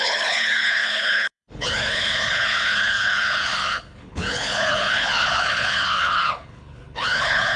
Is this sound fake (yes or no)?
yes